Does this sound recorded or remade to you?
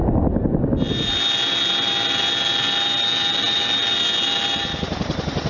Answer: recorded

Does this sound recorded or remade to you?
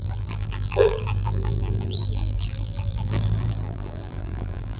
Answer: remade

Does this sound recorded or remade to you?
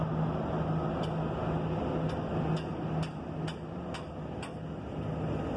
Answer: recorded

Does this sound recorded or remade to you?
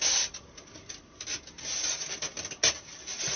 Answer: recorded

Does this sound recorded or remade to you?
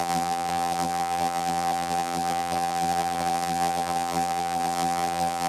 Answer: remade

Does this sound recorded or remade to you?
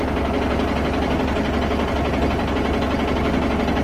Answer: recorded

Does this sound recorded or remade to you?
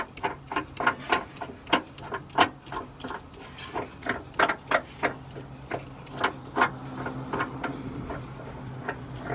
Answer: recorded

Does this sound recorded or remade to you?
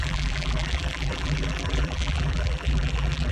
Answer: remade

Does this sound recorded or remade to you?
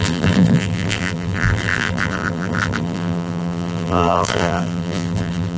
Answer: remade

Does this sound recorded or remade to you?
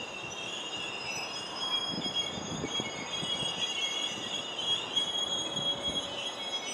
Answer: recorded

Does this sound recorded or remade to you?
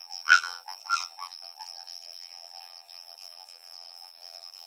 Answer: remade